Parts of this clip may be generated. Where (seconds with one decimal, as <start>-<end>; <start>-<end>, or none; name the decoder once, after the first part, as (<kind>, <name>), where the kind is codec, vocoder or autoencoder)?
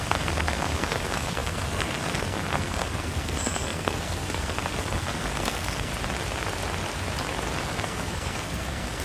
0.0-5.9 (codec, SNAC); 7.6-9.0